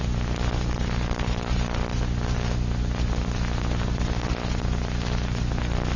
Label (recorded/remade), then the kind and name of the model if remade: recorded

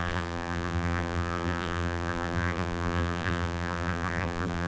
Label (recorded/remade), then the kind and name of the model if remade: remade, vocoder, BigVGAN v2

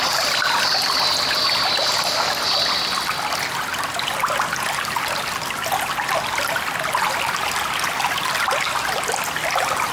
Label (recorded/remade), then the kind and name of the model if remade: recorded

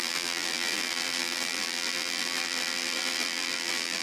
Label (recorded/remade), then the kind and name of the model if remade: remade, vocoder, BigVGAN v2